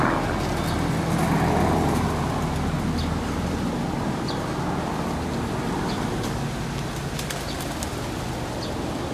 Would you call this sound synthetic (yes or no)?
no